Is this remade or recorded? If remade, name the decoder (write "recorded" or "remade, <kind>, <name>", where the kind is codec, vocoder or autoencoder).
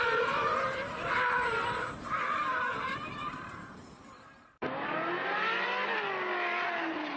recorded